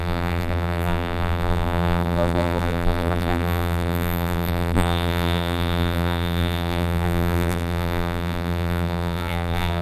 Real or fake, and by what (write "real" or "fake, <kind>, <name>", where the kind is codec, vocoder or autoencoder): fake, vocoder, BigVGAN v2